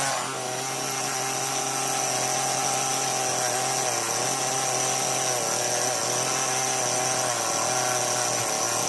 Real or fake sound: real